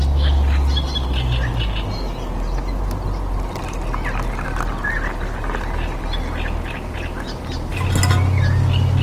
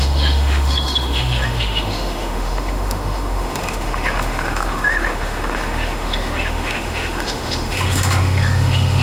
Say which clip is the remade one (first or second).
second